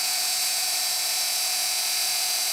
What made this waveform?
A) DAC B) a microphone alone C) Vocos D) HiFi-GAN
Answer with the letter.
C